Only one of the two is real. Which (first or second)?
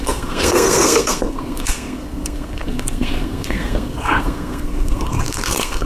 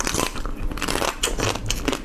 second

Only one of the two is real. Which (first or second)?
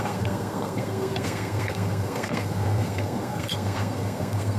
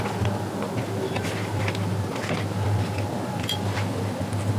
second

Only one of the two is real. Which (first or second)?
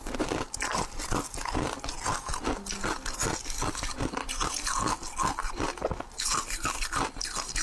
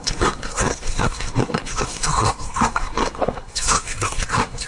first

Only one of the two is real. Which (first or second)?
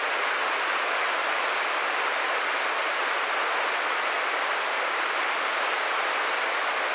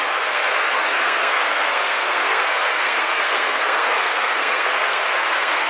first